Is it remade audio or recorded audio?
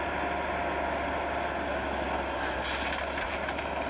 recorded